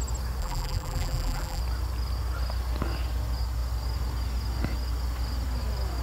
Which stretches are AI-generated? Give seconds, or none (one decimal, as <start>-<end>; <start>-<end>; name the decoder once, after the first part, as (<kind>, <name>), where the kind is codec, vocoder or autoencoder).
0.4-1.6 (vocoder, BigVGAN v2)